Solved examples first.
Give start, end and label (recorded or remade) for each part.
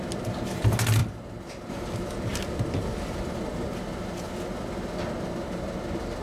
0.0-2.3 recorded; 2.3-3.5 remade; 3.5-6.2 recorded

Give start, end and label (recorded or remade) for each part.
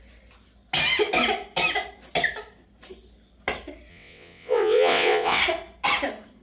0.0-3.9 recorded; 3.9-5.4 remade; 5.4-6.4 recorded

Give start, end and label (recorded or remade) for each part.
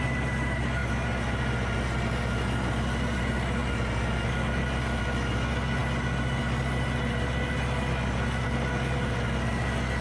0.0-10.0 recorded